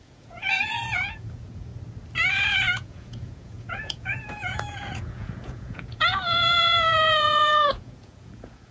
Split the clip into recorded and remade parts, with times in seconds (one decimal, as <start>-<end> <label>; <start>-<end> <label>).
0.0-1.7 remade; 1.7-2.3 recorded; 2.3-8.7 remade